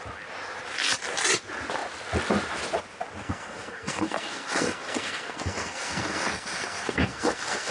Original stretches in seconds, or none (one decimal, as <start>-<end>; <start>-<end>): 0.0-3.2